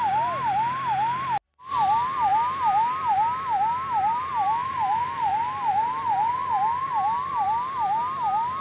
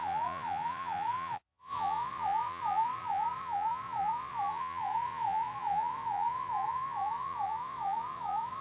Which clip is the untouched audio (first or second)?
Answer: first